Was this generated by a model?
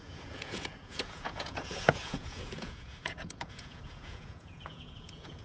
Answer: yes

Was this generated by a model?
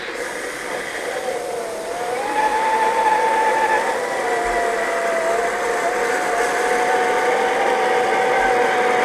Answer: no